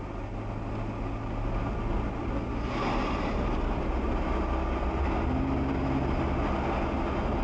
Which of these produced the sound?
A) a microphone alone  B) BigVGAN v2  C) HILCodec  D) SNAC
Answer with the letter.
A